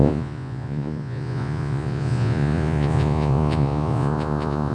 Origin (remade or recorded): remade